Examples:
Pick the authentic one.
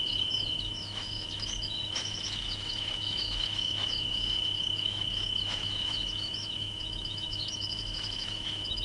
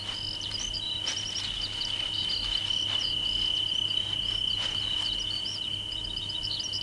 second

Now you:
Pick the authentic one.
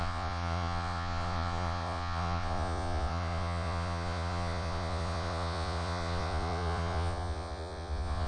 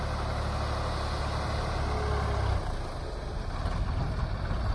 second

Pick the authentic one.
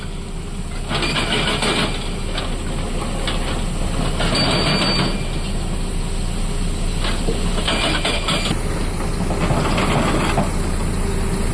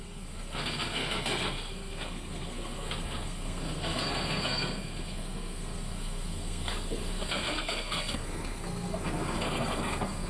first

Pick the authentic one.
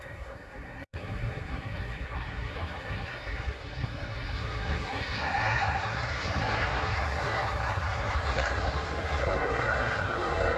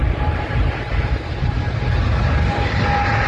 second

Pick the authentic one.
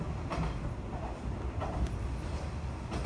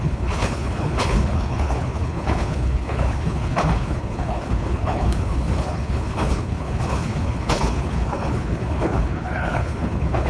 first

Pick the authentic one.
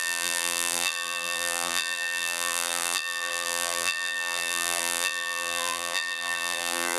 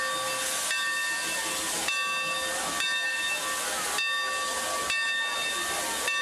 second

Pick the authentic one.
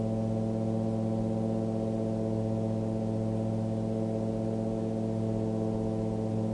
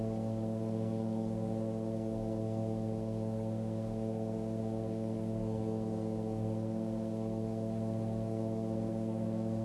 first